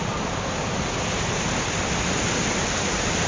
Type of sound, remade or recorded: recorded